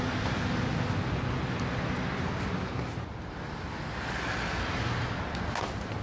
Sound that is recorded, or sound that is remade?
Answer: recorded